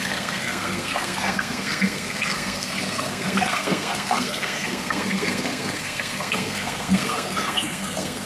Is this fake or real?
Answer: fake